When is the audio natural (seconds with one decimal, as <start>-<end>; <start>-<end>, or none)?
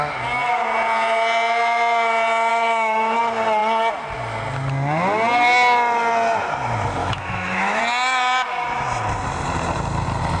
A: 0.0-2.5; 3.2-7.0; 7.8-10.4